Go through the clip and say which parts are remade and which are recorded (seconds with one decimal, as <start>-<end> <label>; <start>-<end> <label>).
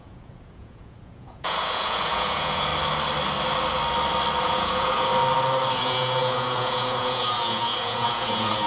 0.0-2.7 remade; 2.7-4.4 recorded; 4.4-5.1 remade; 5.1-5.7 recorded; 5.7-8.7 remade